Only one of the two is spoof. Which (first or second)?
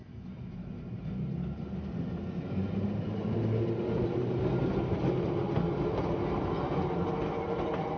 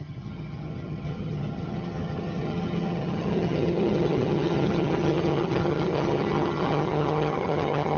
second